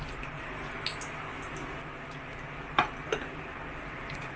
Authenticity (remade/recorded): recorded